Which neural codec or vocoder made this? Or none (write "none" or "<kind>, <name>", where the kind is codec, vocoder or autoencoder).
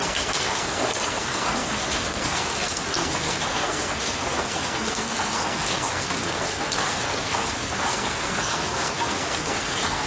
codec, SNAC